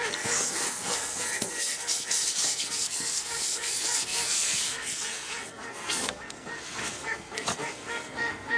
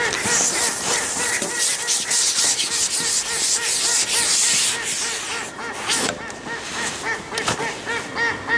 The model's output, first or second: first